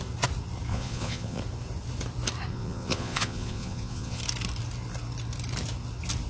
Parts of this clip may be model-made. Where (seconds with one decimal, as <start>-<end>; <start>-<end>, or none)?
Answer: 0.7-1.4; 2.5-4.2